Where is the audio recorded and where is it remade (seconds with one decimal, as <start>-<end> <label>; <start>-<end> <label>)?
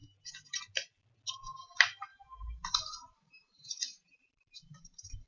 0.0-2.1 recorded; 2.1-5.3 remade